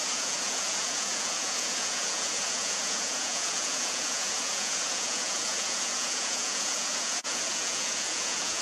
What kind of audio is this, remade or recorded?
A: remade